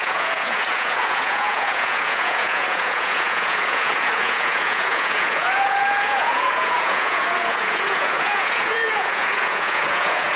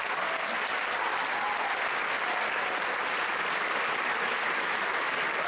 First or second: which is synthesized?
first